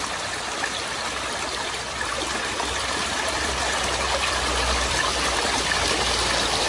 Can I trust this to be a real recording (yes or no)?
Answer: no